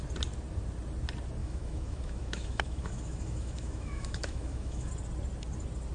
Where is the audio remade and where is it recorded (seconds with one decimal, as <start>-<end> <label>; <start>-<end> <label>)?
0.0-1.4 recorded; 1.4-4.9 remade; 4.9-5.9 recorded